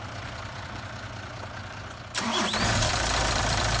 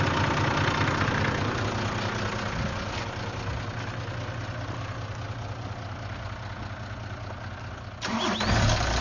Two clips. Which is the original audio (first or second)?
second